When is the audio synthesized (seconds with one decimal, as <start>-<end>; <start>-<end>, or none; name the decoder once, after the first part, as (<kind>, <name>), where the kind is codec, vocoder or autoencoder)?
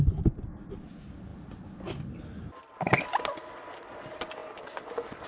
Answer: none